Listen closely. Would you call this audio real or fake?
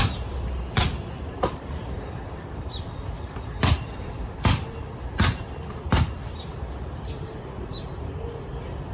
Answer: fake